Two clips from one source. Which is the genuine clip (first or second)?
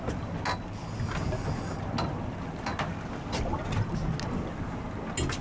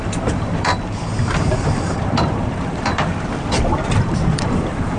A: first